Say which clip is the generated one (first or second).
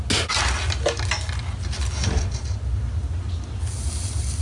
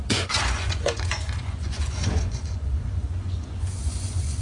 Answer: second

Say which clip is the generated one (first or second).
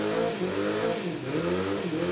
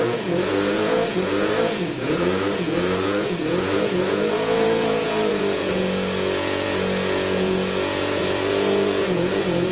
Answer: second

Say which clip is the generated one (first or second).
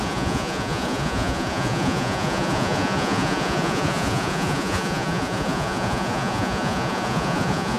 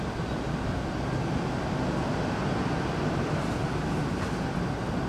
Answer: first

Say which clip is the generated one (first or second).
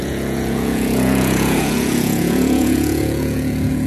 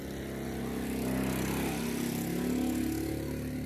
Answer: first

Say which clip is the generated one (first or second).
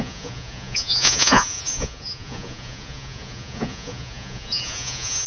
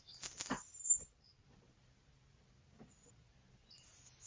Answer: first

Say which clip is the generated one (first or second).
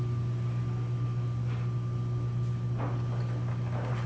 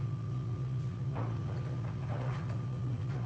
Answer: second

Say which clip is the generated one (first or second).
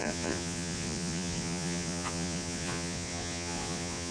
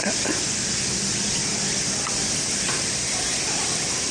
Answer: first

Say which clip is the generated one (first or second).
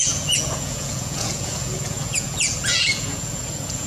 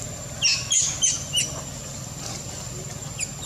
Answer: first